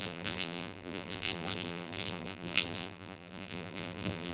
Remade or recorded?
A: remade